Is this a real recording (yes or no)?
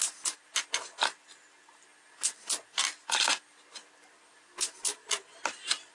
yes